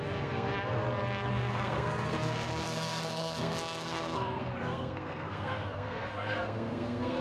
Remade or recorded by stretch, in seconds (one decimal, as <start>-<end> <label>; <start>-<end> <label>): 0.0-0.8 remade; 0.8-1.3 recorded; 1.3-7.2 remade